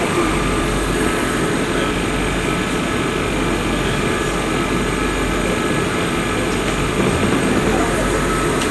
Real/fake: real